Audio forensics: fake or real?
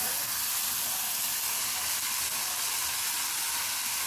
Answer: real